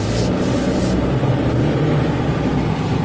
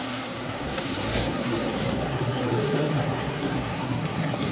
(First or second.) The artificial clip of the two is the second